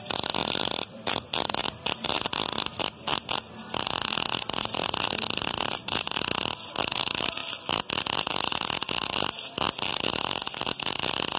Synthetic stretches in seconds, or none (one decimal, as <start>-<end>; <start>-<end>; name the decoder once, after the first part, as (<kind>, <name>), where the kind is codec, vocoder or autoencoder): 0.0-4.8 (vocoder, BigVGAN v2); 5.4-7.4